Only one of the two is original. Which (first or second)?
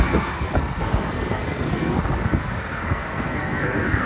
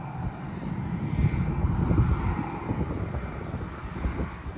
second